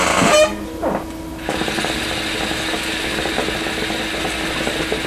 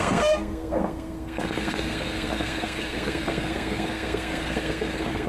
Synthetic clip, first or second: second